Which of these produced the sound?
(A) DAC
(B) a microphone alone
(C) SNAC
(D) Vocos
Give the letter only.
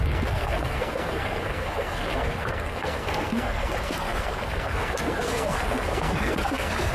C